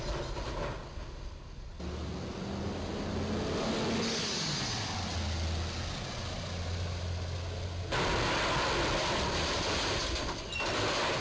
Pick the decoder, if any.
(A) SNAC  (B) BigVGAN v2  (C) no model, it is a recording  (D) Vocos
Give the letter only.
C